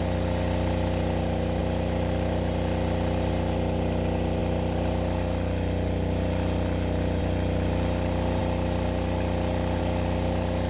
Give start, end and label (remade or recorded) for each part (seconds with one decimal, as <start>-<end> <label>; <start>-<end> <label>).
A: 0.0-1.6 recorded; 1.6-3.3 remade; 3.3-4.4 recorded; 4.4-7.2 remade; 7.2-10.7 recorded